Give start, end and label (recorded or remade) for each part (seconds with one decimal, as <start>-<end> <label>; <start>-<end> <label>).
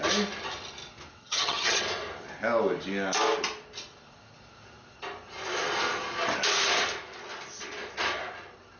0.0-1.2 recorded; 1.2-1.8 remade; 1.8-8.8 recorded